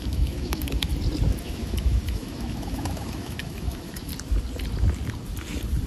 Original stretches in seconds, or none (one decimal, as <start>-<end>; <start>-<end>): 0.9-1.4; 4.1-5.9